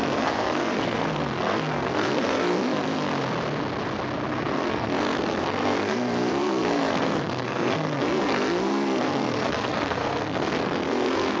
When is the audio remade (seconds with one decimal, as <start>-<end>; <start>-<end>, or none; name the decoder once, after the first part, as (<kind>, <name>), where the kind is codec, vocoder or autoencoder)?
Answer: 0.0-3.1 (codec, SNAC); 4.4-11.4